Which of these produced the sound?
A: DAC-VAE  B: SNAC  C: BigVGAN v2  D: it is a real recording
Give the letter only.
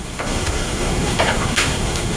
B